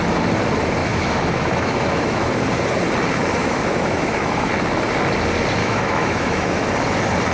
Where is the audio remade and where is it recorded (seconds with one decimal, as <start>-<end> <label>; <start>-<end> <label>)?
0.0-0.8 recorded; 0.8-2.3 remade; 2.3-3.4 recorded; 3.4-4.5 remade; 4.5-5.6 recorded; 5.6-6.7 remade; 6.7-7.3 recorded